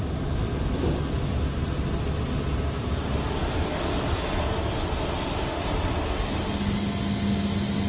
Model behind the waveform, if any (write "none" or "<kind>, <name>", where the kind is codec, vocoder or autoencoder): none